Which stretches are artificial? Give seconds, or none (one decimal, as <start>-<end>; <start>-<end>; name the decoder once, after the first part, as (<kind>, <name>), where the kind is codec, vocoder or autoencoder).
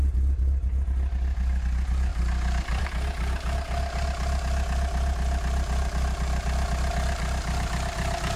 none